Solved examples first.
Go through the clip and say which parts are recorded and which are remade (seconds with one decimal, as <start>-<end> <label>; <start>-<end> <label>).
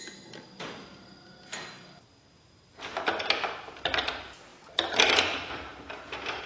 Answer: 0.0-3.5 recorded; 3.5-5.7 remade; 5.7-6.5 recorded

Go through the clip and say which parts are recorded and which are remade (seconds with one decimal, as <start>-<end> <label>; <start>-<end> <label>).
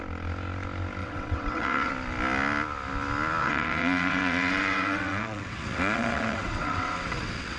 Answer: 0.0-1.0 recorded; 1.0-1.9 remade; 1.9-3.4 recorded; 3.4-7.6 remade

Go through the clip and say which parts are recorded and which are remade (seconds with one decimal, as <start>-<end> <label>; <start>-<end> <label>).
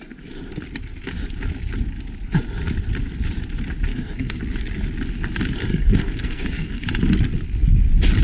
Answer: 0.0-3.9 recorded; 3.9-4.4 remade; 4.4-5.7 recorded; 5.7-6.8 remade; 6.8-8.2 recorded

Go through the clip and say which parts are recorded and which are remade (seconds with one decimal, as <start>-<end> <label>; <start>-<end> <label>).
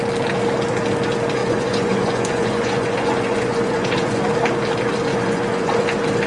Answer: 0.0-1.4 recorded; 1.4-4.2 remade; 4.2-5.1 recorded; 5.1-5.7 remade; 5.7-6.3 recorded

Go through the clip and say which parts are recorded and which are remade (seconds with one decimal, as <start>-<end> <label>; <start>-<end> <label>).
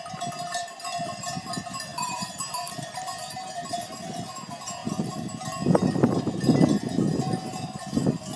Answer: 0.0-1.9 recorded; 1.9-3.0 remade; 3.0-4.8 recorded; 4.8-5.3 remade; 5.3-8.4 recorded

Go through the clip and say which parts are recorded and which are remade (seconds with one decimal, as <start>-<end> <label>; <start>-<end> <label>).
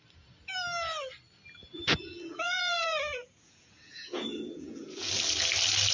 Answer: 0.0-1.6 recorded; 1.6-5.1 remade; 5.1-5.9 recorded